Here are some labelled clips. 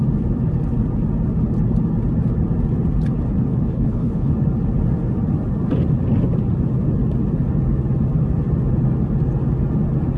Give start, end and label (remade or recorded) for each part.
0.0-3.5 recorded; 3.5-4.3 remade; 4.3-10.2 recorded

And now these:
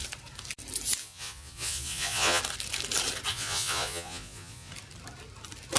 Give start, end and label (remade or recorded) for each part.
0.0-1.0 recorded; 1.0-2.4 remade; 2.4-3.3 recorded; 3.3-4.7 remade; 4.7-5.8 recorded

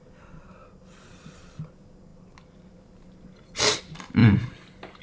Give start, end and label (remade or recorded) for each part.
0.0-5.0 recorded

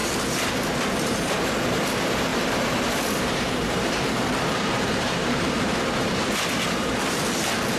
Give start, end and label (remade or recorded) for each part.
0.0-2.3 recorded; 2.3-6.4 remade; 6.4-7.8 recorded

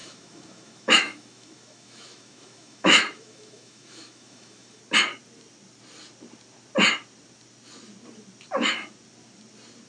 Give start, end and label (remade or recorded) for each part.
0.0-4.8 remade; 4.8-9.9 recorded

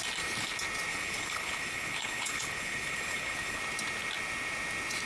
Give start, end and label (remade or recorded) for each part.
0.0-0.9 recorded; 0.9-3.6 remade; 3.6-5.1 recorded

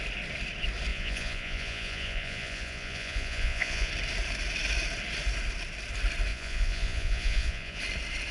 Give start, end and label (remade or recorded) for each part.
0.0-0.9 recorded; 0.9-3.9 remade; 3.9-6.3 recorded; 6.3-7.8 remade; 7.8-8.3 recorded